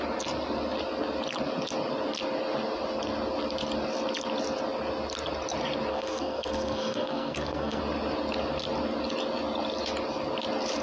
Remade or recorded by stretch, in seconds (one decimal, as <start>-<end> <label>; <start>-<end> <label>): 0.0-5.9 recorded; 5.9-7.8 remade; 7.8-10.8 recorded